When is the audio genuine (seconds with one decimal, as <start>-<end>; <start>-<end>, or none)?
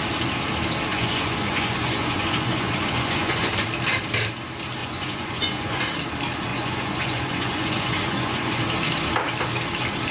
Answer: 0.0-0.9; 3.5-4.8; 5.8-6.5; 8.6-10.1